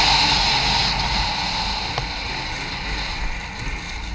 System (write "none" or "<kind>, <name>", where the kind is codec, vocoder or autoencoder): none